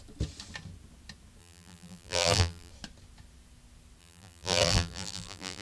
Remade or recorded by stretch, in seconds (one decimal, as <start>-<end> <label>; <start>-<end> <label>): 0.0-1.4 recorded; 1.4-2.7 remade; 2.7-4.0 recorded; 4.0-5.6 remade